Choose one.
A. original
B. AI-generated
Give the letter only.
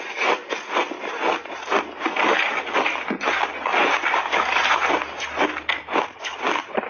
A